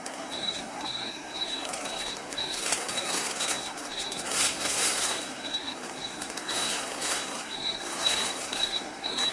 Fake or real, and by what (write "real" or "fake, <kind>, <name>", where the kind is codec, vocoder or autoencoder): fake, codec, SNAC